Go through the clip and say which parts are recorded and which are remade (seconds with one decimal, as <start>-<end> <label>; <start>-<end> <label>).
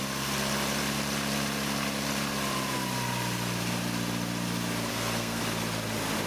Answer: 0.0-4.9 recorded; 4.9-5.4 remade; 5.4-6.3 recorded